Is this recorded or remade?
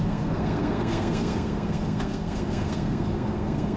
remade